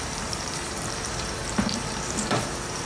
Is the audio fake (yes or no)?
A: yes